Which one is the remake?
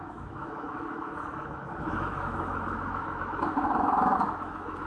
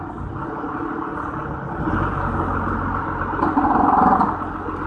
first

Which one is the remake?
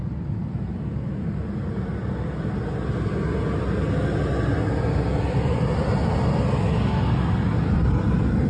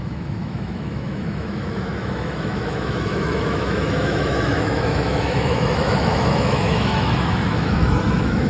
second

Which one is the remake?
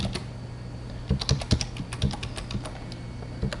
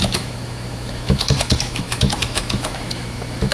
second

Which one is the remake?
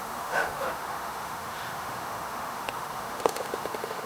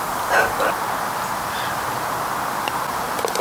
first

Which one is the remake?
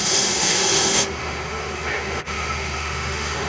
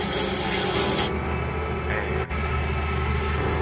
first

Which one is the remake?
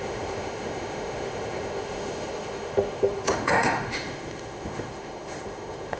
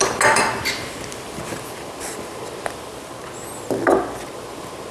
first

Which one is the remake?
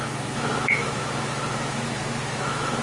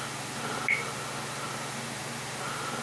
first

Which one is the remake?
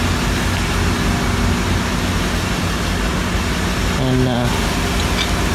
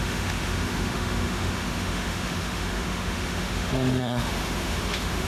second